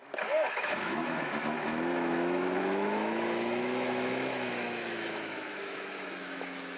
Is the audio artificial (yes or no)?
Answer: yes